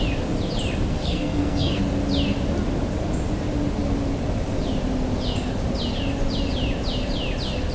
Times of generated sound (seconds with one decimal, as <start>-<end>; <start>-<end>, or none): 0.9-1.8